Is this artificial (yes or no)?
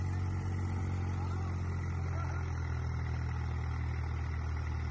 no